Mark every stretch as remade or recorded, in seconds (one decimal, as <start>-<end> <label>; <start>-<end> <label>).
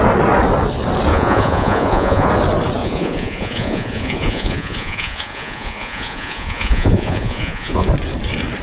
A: 0.0-1.1 recorded; 1.1-2.3 remade; 2.3-2.8 recorded; 2.8-7.9 remade; 7.9-8.6 recorded